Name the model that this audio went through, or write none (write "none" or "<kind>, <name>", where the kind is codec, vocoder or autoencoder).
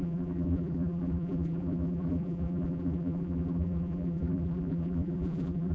vocoder, BigVGAN v2